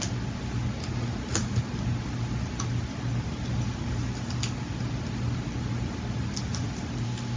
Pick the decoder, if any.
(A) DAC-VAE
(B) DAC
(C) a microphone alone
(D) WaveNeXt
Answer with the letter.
C